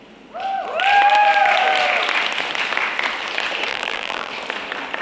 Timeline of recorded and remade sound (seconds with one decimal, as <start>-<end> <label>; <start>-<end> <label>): 0.0-3.7 recorded; 3.7-4.3 remade; 4.3-5.0 recorded